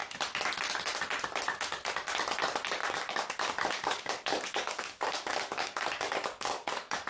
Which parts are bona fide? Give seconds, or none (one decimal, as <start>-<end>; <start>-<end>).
0.0-2.8